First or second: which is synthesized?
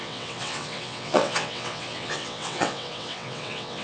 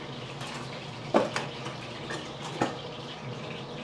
first